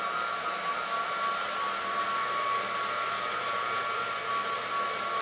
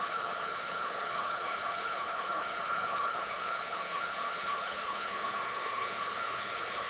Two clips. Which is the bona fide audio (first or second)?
first